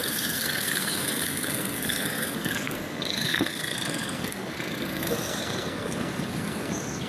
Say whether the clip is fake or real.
fake